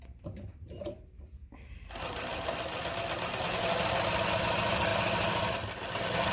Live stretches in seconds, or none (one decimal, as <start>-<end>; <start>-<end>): 0.0-6.3